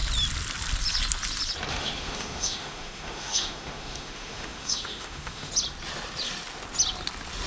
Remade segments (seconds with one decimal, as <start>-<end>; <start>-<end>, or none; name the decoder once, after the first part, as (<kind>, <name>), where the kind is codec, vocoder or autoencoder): 1.7-5.5 (autoencoder, DAC-VAE)